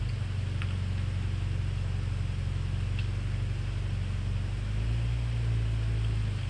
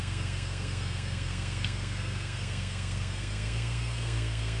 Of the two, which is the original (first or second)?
first